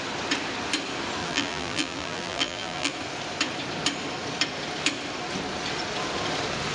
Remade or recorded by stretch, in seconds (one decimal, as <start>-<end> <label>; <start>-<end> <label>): 0.0-1.2 recorded; 1.2-2.9 remade; 2.9-6.7 recorded